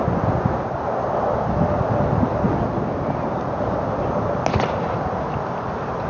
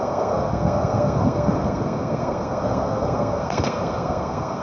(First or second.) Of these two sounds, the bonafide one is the first